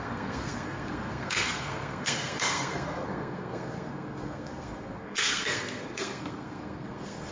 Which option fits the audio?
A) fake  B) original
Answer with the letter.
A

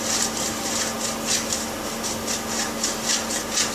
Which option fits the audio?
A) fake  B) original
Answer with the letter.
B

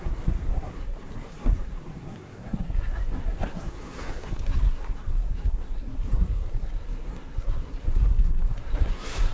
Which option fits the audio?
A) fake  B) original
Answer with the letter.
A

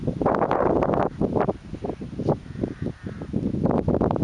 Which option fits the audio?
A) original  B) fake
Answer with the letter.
A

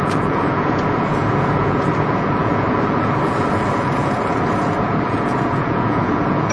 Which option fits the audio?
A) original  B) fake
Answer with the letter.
B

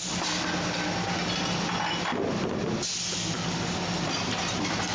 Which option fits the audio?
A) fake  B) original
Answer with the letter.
B